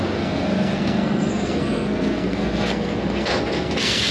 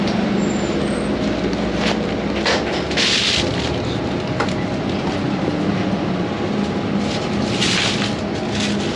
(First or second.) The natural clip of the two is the second